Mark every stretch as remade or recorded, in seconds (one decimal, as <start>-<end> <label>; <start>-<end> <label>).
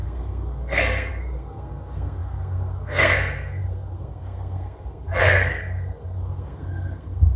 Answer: 0.0-7.4 remade